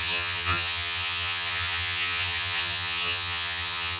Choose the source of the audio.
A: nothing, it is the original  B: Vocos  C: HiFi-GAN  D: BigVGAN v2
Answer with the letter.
C